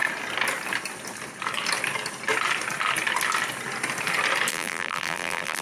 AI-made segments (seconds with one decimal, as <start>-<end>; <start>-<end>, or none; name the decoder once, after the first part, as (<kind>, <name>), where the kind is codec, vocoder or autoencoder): 4.5-5.6 (vocoder, BigVGAN v2)